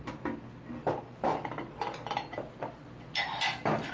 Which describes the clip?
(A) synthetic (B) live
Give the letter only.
B